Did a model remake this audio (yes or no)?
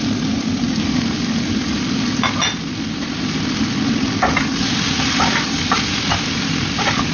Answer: no